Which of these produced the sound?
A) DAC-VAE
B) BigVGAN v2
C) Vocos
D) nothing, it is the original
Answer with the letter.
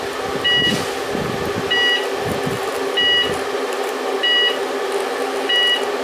D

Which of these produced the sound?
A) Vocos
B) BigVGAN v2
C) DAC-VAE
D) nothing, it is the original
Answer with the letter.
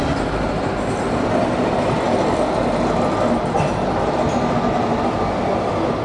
D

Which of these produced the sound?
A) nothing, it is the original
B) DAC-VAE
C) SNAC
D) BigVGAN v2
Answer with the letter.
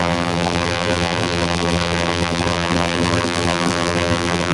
D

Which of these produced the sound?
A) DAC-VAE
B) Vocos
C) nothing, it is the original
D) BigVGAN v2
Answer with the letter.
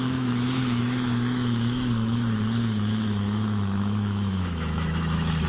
A